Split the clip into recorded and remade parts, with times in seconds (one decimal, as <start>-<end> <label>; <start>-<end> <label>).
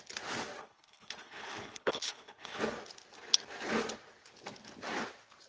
0.0-0.6 recorded; 0.6-2.6 remade; 2.6-5.5 recorded